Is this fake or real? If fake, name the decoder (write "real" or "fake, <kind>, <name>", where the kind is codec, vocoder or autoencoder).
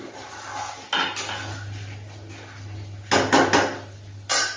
real